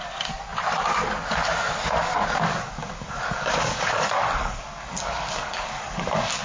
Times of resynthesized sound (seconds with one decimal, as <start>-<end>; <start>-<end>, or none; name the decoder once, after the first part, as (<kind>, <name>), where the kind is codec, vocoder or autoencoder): 2.5-6.4 (codec, DAC)